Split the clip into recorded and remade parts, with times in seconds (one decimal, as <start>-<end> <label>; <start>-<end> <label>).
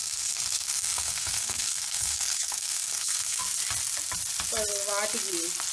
0.0-3.4 remade; 3.4-5.7 recorded